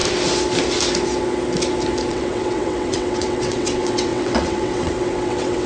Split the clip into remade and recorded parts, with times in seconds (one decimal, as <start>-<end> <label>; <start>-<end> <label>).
0.0-2.1 recorded; 2.1-5.7 remade